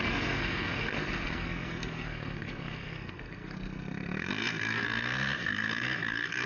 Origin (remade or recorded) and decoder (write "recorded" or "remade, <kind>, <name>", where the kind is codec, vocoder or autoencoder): remade, codec, SNAC